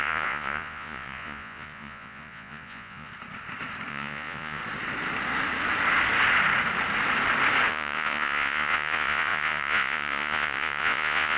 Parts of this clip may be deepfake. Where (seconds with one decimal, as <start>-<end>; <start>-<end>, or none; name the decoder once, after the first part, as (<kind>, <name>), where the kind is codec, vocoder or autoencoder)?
0.0-3.1 (vocoder, Vocos); 3.9-4.6; 7.7-11.4